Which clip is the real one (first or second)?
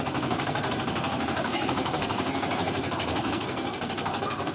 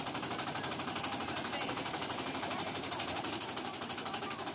second